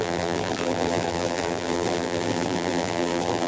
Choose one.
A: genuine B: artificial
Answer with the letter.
B